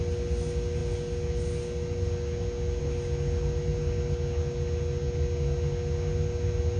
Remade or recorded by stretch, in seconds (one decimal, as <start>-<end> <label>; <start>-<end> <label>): 0.0-6.8 recorded